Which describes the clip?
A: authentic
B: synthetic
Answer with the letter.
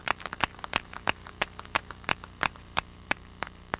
B